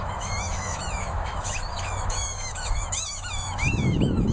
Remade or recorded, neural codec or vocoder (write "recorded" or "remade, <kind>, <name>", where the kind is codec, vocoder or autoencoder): remade, autoencoder, DAC-VAE